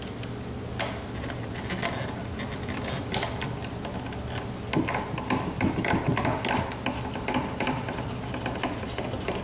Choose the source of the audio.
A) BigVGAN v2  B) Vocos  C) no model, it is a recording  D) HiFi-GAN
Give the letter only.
C